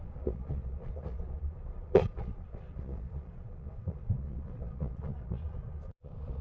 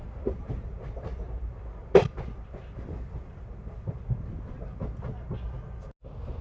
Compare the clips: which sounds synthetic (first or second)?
first